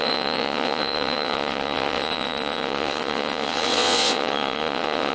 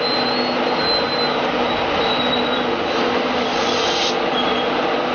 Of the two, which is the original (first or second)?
second